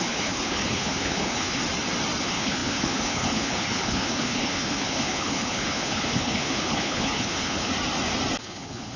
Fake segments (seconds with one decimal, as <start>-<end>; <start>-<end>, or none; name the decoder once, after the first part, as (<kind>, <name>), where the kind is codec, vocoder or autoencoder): 0.0-1.6 (codec, HILCodec); 2.2-7.7; 8.4-9.0